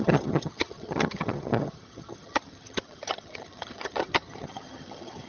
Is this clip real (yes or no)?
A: no